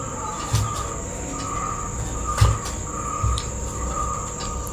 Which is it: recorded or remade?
recorded